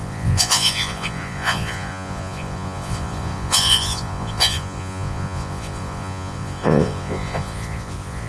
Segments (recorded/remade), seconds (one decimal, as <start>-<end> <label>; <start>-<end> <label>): 0.0-8.3 remade

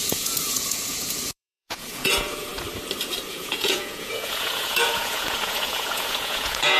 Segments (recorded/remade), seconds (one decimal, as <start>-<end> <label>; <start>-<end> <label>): 0.0-2.5 remade; 2.5-3.3 recorded; 3.3-6.8 remade

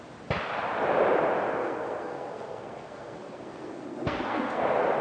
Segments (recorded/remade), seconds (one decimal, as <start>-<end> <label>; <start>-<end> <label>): 0.0-1.6 recorded; 1.6-4.6 remade; 4.6-5.0 recorded

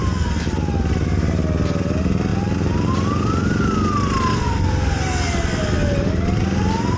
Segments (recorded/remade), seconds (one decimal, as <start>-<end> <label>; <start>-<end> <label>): 0.0-7.0 recorded

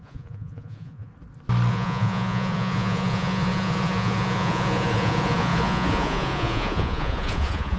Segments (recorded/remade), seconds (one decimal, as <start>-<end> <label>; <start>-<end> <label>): 0.0-1.1 remade; 1.1-1.7 recorded; 1.7-7.8 remade

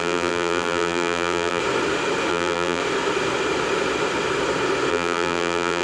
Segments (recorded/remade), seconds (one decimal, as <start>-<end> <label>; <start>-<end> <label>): 0.0-1.6 remade; 1.6-2.3 recorded; 2.3-2.8 remade; 2.8-4.9 recorded; 4.9-5.8 remade